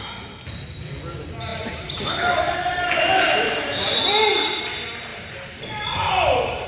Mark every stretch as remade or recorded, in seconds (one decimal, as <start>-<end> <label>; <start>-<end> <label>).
0.0-1.5 recorded; 1.5-4.6 remade; 4.6-6.7 recorded

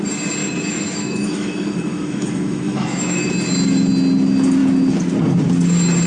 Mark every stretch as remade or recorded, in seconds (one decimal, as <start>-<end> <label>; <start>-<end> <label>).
0.0-0.4 recorded; 0.4-3.3 remade; 3.3-6.1 recorded

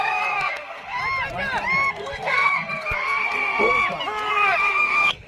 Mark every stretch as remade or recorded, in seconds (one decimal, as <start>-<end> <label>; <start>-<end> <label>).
0.0-1.0 remade; 1.0-1.9 recorded; 1.9-3.7 remade; 3.7-4.3 recorded; 4.3-5.3 remade

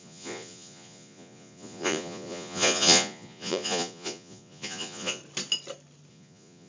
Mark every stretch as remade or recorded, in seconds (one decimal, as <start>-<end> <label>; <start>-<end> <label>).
0.0-5.2 remade; 5.2-6.1 recorded; 6.1-6.7 remade

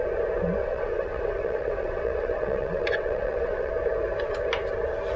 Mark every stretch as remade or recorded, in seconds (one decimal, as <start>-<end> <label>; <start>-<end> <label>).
0.0-0.6 recorded; 0.6-3.7 remade; 3.7-5.2 recorded

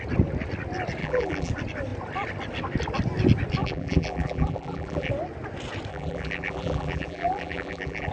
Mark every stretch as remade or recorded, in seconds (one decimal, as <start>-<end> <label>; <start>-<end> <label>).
0.0-1.0 recorded; 1.0-1.5 remade; 1.5-3.6 recorded; 3.6-5.1 remade; 5.1-5.9 recorded; 5.9-8.1 remade

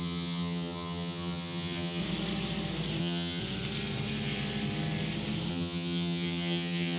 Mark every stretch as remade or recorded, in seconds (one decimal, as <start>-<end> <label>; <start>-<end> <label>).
0.0-2.0 remade; 2.0-3.0 recorded; 3.0-3.4 remade; 3.4-5.5 recorded; 5.5-7.0 remade